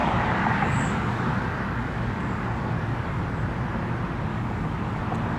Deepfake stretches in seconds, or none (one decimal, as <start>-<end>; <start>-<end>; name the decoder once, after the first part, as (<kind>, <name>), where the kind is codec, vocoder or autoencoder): 0.0-3.2 (codec, DAC); 4.3-5.0

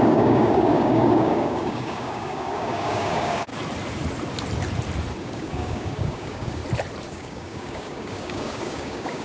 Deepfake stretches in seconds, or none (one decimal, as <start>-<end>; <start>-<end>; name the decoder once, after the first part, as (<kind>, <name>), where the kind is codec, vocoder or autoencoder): 0.0-3.5 (codec, DAC); 5.2-6.6; 7.1-9.2

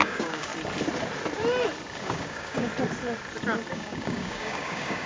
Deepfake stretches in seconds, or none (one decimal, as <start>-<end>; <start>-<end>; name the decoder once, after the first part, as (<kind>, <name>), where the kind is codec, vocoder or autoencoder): 0.0-0.5 (codec, DAC); 2.0-2.7; 3.7-5.1

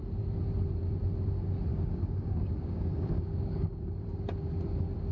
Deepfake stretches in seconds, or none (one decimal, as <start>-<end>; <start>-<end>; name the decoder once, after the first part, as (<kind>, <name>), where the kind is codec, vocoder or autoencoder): 1.7-4.0 (codec, DAC)